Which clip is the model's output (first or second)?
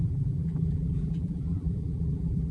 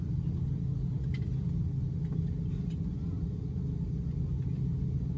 first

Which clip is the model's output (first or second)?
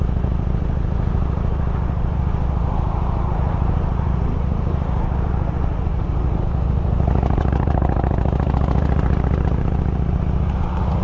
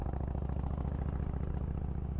first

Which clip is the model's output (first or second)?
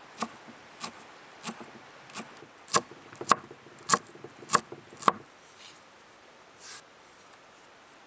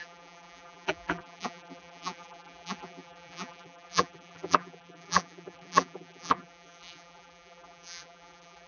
second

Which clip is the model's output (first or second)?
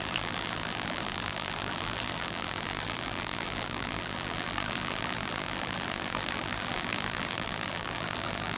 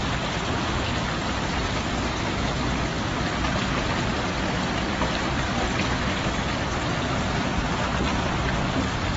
first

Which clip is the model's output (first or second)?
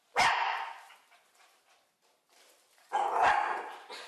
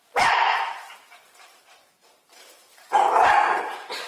second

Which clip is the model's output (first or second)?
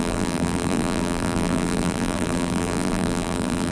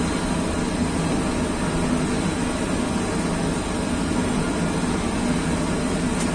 first